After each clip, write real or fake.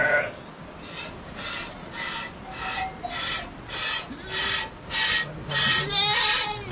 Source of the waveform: real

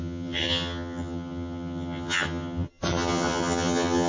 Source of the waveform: fake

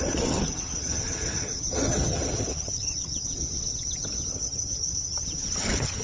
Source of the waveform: fake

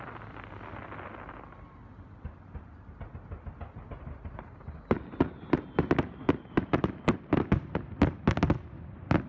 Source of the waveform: real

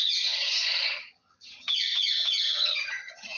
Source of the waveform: fake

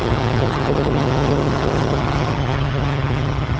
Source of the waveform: fake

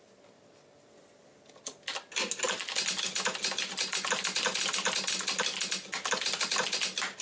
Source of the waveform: real